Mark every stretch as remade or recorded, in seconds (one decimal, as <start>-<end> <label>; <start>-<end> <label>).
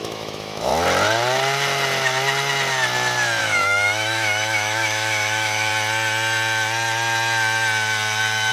0.0-0.7 remade; 0.7-3.4 recorded; 3.4-5.7 remade; 5.7-8.5 recorded